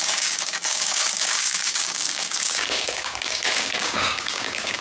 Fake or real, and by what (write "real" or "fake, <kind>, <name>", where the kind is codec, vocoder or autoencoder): fake, codec, DAC